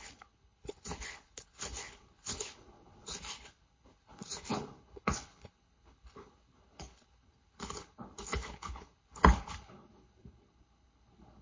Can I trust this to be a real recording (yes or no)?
no